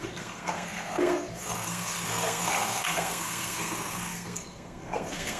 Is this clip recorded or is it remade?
remade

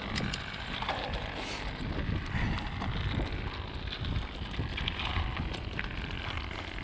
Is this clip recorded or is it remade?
recorded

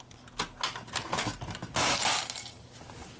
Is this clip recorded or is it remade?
recorded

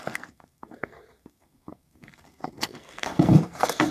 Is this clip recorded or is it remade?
remade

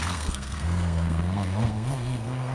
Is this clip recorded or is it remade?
remade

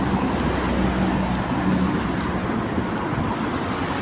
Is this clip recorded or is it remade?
recorded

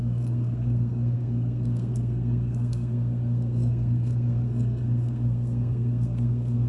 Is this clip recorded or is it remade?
remade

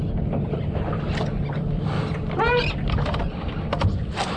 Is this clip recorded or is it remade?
recorded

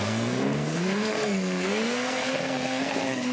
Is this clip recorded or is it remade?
remade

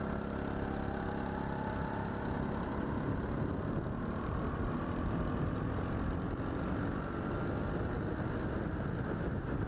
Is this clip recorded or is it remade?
recorded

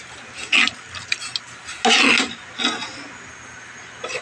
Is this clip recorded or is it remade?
recorded